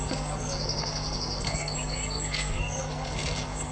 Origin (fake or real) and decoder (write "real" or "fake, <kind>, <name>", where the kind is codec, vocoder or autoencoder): fake, codec, SNAC